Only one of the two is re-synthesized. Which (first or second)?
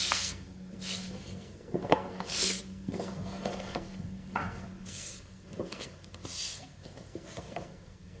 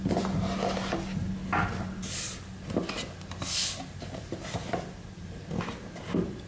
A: first